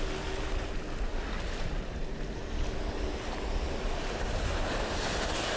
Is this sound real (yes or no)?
yes